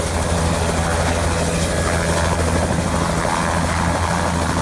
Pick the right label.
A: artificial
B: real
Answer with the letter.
B